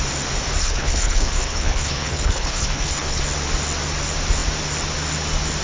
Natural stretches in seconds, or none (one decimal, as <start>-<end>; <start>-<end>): 0.0-0.6; 3.2-5.6